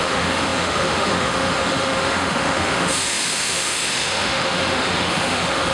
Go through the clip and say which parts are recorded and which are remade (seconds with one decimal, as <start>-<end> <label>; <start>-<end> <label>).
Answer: 0.0-5.7 remade